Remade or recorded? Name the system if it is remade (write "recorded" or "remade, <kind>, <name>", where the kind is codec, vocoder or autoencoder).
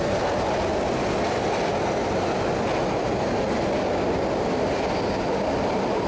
recorded